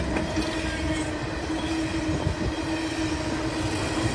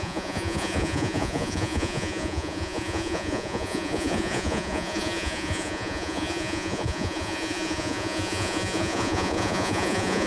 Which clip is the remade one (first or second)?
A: second